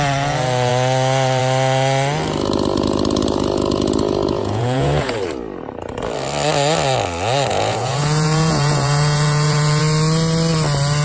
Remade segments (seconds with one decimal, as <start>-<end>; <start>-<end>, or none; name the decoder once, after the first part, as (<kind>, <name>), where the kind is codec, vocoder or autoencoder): 4.4-5.2 (vocoder, Vocos); 7.5-9.8